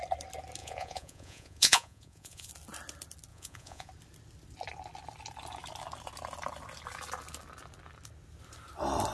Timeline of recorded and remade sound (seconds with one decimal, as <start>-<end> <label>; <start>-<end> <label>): 0.0-0.6 recorded; 0.6-2.5 remade; 2.5-3.3 recorded; 3.3-3.9 remade; 3.9-9.1 recorded